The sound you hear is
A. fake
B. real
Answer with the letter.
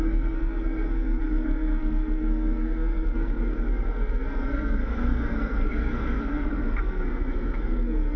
A